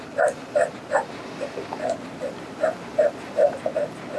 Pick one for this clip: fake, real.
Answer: real